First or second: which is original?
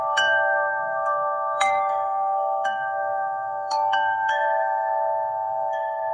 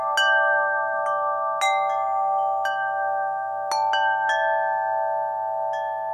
second